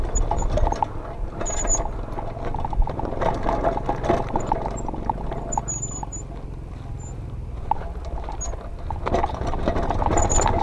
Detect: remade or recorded recorded